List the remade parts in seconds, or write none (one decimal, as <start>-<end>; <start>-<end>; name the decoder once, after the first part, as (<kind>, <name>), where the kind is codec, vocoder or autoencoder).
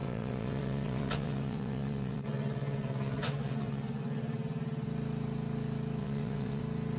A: 0.0-4.2 (vocoder, WaveNeXt); 6.0-6.6